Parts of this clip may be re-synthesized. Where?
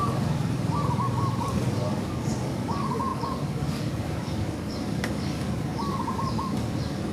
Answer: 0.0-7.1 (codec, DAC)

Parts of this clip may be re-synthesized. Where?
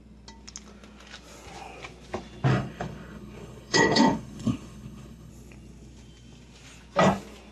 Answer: 2.5-5.3 (codec, HILCodec)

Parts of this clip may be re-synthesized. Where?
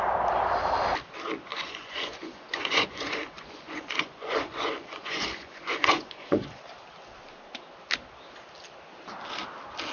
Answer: 1.5-6.6 (vocoder, Vocos)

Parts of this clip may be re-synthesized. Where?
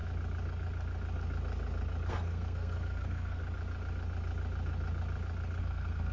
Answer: 2.1-3.4 (codec, SNAC); 5.6-6.1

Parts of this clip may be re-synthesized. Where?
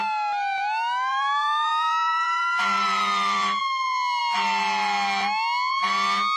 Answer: 1.1-3.6 (vocoder, BigVGAN v2)